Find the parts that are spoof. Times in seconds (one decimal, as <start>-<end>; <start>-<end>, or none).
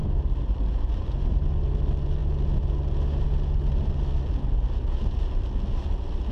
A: none